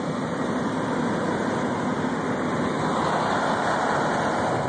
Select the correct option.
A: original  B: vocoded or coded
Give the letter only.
A